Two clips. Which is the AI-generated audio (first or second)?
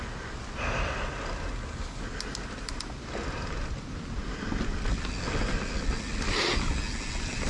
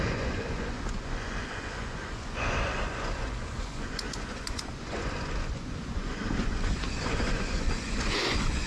second